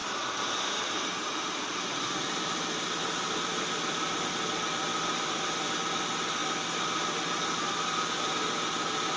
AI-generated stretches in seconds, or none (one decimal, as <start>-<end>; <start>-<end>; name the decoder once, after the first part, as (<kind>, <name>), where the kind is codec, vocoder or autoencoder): 0.0-4.3 (vocoder, BigVGAN v2); 4.9-5.5